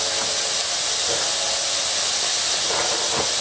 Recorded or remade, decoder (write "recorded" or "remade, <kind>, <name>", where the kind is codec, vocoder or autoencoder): recorded